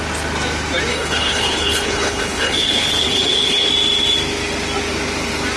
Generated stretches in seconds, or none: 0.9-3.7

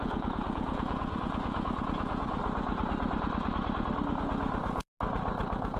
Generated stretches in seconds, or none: 0.0-2.4

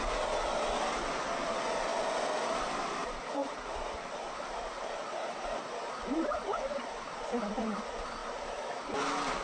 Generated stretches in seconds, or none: 3.0-7.5; 8.2-8.7

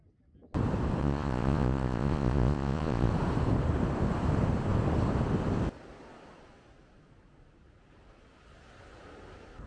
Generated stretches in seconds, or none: 1.0-3.1

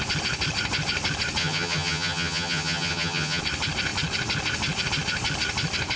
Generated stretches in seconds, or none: 1.4-3.4

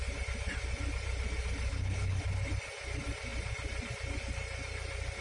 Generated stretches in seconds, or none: 1.7-2.2